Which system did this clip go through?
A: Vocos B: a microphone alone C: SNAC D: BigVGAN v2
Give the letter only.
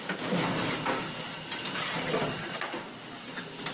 B